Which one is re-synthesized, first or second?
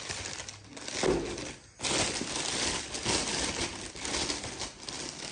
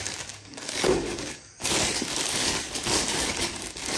second